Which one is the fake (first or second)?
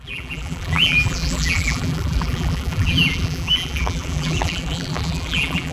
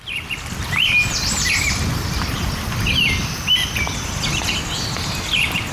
first